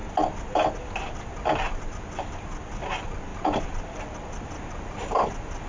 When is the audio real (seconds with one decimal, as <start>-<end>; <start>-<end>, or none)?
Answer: 0.0-5.7